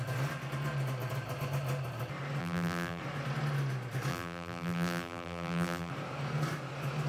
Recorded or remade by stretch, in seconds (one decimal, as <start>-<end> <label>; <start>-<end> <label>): 0.0-2.4 recorded; 2.4-3.0 remade; 3.0-4.1 recorded; 4.1-5.9 remade; 5.9-7.1 recorded